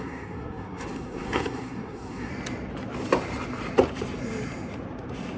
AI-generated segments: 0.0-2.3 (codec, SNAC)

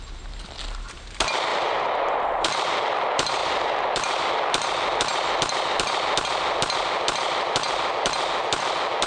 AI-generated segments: 1.5-2.8 (vocoder, BigVGAN v2); 3.4-4.3

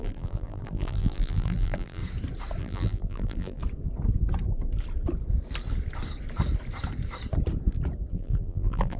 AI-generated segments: 0.0-2.0 (vocoder, BigVGAN v2); 2.6-3.6; 8.1-9.0